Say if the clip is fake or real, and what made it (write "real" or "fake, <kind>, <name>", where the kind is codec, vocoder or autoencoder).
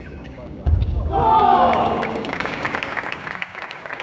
fake, codec, DAC